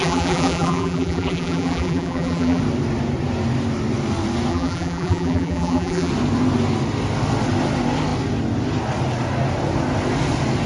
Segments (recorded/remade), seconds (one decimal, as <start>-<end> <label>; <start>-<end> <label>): 0.0-2.6 remade; 2.6-4.5 recorded; 4.5-6.1 remade; 6.1-10.7 recorded